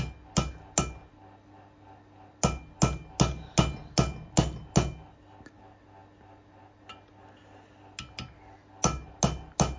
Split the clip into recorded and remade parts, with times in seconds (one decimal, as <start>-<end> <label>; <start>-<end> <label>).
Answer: 0.0-9.8 recorded